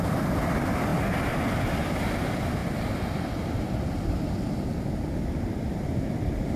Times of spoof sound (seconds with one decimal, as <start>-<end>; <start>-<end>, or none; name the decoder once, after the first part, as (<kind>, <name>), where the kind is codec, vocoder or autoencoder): 2.6-6.6 (vocoder, BigVGAN v2)